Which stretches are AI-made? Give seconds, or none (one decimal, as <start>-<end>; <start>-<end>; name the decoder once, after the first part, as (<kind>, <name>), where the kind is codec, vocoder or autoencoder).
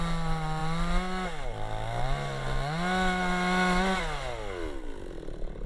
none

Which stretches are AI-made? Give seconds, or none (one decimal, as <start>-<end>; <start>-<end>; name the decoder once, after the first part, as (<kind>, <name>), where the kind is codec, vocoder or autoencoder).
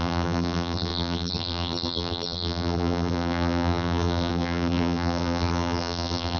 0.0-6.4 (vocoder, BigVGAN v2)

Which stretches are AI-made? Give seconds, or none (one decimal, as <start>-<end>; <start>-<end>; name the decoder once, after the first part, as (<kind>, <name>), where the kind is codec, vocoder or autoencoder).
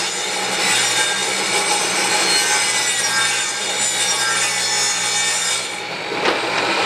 none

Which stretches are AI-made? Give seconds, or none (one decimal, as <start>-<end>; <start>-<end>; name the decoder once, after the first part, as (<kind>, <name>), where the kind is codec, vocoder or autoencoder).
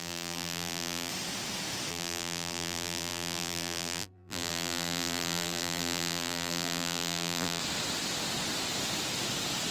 0.0-1.1 (vocoder, BigVGAN v2); 1.9-7.6